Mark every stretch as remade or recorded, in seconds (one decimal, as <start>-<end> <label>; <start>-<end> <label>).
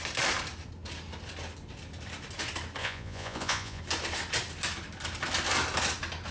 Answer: 0.0-2.8 recorded; 2.8-3.8 remade; 3.8-6.3 recorded